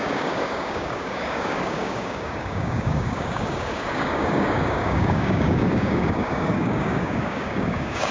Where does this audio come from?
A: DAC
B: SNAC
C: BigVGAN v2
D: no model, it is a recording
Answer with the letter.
A